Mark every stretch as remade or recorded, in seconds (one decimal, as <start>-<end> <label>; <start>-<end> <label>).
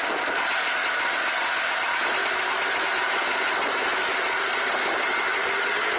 0.0-6.0 recorded